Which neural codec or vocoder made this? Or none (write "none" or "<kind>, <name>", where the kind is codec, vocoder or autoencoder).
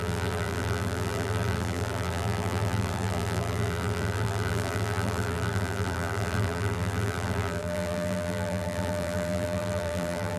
vocoder, BigVGAN v2